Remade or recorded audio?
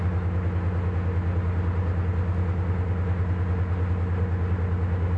recorded